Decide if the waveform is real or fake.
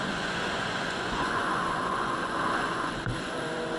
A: fake